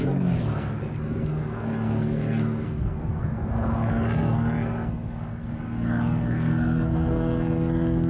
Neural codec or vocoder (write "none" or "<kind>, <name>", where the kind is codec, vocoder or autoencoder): codec, SNAC